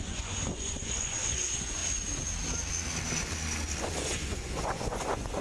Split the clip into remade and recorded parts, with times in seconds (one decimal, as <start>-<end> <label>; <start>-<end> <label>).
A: 0.0-1.8 remade; 1.8-3.8 recorded; 3.8-5.4 remade